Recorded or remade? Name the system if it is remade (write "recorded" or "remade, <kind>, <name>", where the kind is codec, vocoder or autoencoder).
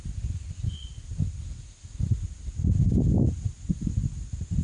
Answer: recorded